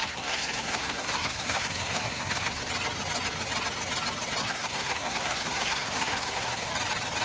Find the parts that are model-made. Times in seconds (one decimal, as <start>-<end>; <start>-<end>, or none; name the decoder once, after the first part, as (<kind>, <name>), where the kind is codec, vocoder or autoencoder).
0.0-2.7 (codec, SNAC); 4.4-6.7